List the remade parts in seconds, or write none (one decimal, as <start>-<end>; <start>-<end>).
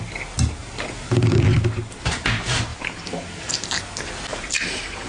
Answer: 0.6-1.4; 2.7-3.8; 4.3-5.1